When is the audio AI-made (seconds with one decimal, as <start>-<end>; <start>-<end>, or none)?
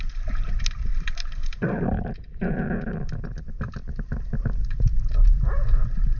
0.9-2.5